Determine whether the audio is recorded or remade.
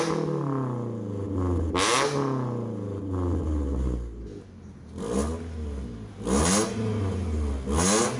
recorded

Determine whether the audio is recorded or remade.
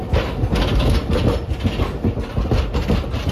recorded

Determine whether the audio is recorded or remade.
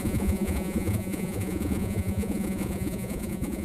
remade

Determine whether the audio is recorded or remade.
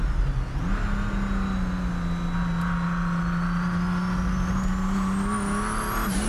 recorded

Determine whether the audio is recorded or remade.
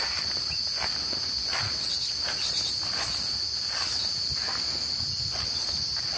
recorded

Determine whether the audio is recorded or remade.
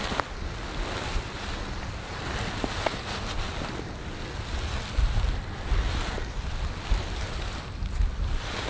recorded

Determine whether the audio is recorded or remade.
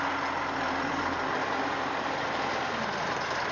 recorded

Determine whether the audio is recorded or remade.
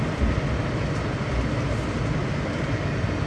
recorded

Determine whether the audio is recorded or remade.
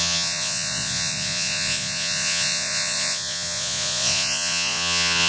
remade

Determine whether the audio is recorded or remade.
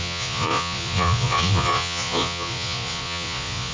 remade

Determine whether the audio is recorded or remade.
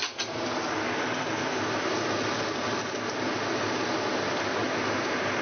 recorded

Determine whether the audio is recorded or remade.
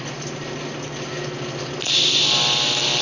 recorded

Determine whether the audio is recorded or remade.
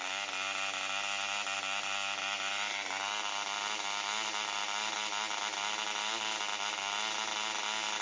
recorded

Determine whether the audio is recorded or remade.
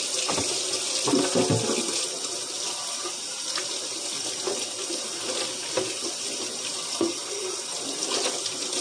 recorded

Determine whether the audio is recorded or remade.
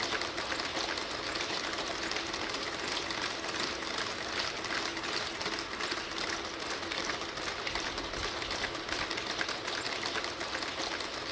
recorded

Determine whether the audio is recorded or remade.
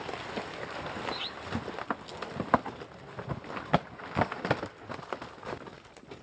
recorded